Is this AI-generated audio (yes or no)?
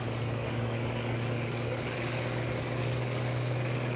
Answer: yes